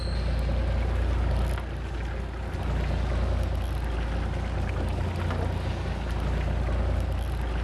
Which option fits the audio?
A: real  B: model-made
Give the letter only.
A